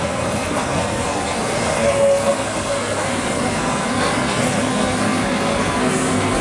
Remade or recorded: remade